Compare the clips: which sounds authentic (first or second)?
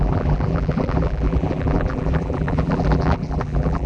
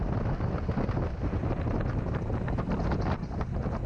second